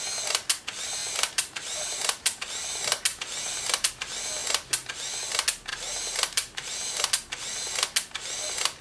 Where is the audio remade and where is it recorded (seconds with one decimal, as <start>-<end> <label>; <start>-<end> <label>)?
0.0-1.0 recorded; 1.0-2.5 remade; 2.5-3.1 recorded; 3.1-3.9 remade; 3.9-5.7 recorded; 5.7-6.9 remade; 6.9-8.8 recorded